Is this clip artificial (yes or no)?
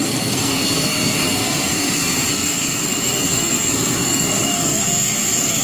yes